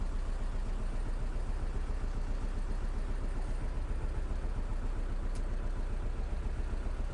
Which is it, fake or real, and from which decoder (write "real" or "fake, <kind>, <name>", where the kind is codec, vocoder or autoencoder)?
real